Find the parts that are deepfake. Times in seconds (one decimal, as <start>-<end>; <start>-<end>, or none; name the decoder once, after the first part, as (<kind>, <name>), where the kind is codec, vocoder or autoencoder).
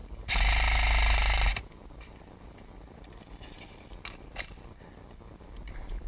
none